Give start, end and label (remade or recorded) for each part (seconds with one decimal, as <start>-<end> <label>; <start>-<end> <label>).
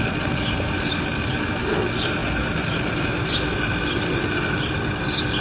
0.0-5.4 recorded